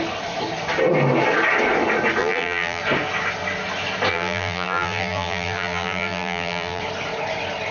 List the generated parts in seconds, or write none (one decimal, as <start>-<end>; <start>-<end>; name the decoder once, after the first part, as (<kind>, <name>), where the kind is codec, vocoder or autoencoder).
2.2-2.8 (vocoder, BigVGAN v2); 4.1-6.8

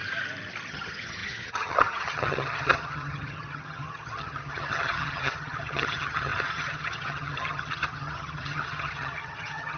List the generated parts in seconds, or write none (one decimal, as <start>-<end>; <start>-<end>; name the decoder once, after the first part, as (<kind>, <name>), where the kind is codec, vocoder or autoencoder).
0.7-9.8 (vocoder, HiFi-GAN)

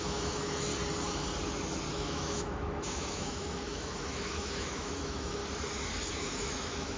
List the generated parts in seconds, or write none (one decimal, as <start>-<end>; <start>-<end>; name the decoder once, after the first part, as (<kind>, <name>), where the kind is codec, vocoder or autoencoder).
0.0-0.7 (autoencoder, DAC-VAE); 1.9-5.4; 6.1-7.0

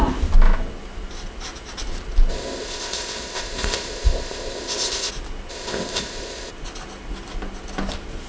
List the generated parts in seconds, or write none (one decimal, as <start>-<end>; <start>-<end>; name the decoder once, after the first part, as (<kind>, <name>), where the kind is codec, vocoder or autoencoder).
2.3-5.1 (codec, ZipCodec); 5.5-6.5

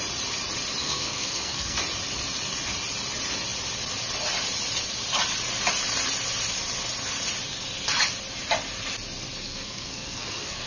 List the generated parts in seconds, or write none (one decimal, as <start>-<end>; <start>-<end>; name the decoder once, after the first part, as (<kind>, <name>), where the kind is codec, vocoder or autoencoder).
0.8-1.8 (codec, SNAC); 9.4-10.7